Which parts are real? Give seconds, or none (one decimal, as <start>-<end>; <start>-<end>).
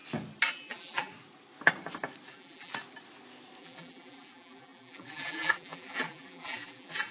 0.0-0.5; 1.1-2.3; 2.7-3.6